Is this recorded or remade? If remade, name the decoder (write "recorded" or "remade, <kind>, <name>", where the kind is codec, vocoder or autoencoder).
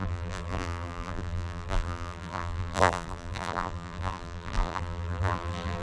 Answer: remade, vocoder, BigVGAN v2